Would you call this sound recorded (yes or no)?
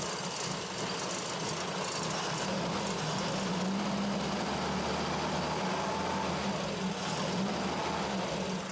yes